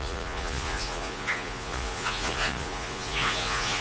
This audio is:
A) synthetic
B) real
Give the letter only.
A